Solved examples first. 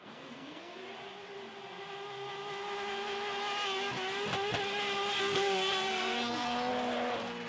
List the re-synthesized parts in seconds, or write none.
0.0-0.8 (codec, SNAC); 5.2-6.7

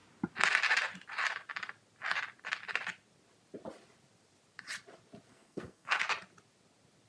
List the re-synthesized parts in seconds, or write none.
5.3-6.0 (codec, SNAC)